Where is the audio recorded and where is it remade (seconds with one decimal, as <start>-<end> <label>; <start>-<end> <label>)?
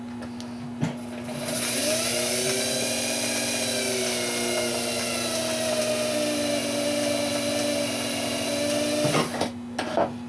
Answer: 0.0-10.3 recorded